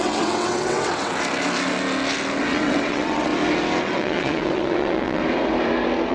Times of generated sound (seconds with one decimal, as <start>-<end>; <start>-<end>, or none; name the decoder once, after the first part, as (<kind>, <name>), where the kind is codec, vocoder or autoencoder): 0.0-1.1 (vocoder, WaveNeXt); 2.4-3.3; 3.8-5.2